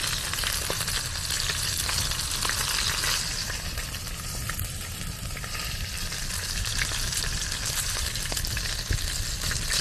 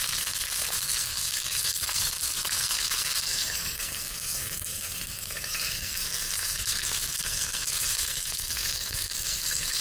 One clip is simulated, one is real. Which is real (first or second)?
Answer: first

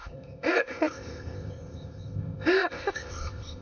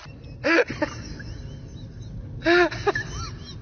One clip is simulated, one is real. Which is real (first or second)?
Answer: second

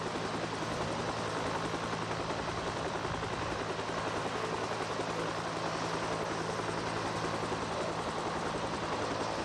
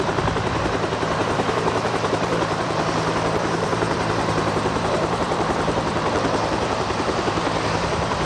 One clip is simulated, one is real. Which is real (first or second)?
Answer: first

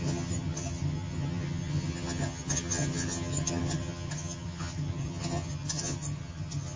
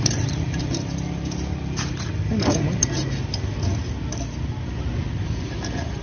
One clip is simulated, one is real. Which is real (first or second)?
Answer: second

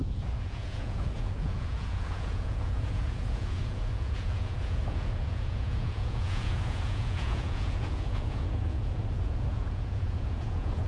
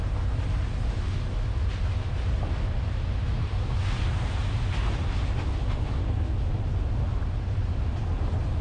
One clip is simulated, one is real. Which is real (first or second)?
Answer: second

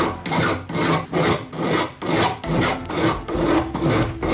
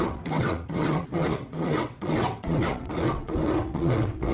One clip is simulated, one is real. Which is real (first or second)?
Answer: first